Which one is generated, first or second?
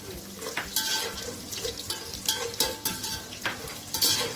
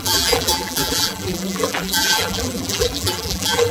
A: second